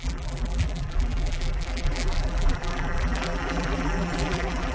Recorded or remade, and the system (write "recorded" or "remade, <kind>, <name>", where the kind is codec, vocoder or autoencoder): remade, vocoder, BigVGAN v2